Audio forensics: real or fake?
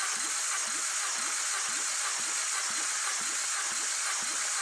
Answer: real